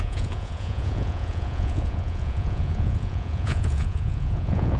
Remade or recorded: remade